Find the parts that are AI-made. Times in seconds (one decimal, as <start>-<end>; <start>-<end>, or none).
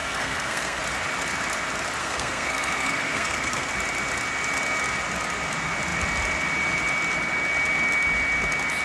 0.0-0.8; 2.0-3.7